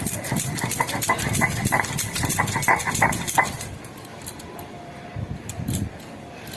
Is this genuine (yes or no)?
no